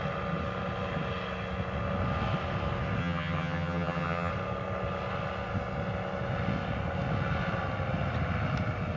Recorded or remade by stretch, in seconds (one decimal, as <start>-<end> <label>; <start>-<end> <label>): 0.0-3.0 recorded; 3.0-4.3 remade; 4.3-9.0 recorded